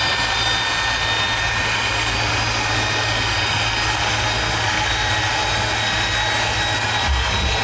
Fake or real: real